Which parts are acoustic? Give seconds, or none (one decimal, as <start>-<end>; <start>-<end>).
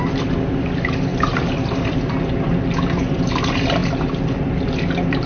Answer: 0.0-1.1; 1.9-5.3